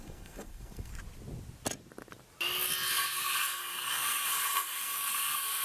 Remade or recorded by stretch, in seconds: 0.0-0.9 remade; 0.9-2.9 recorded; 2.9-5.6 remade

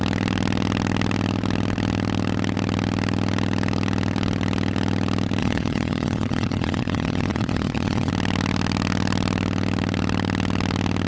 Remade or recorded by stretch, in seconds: 0.0-5.4 recorded; 5.4-8.1 remade; 8.1-11.1 recorded

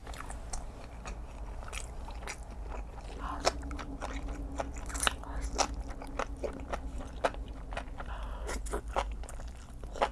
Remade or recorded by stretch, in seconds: 0.0-10.1 recorded